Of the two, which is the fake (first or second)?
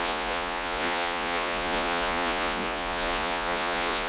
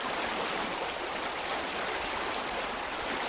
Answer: first